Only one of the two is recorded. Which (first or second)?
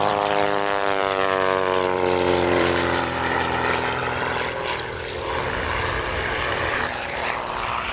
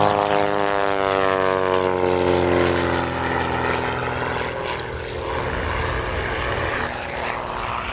second